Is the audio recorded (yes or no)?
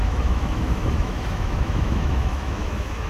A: no